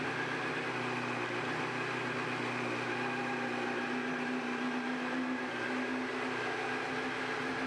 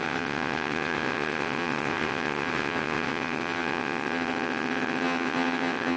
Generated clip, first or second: second